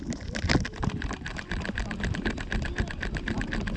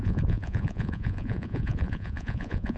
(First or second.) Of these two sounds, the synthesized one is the second